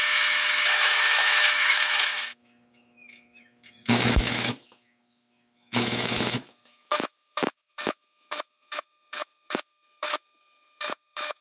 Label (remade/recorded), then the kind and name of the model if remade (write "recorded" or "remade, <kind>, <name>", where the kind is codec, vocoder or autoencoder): remade, autoencoder, DAC-VAE